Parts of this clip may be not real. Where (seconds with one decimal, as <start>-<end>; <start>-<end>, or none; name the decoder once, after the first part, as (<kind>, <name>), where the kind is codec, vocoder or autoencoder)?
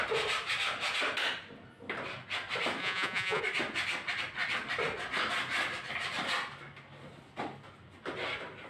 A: 2.8-3.4 (vocoder, Vocos)